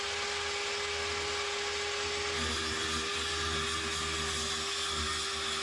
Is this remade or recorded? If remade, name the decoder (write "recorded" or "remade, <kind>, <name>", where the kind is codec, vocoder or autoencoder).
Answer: recorded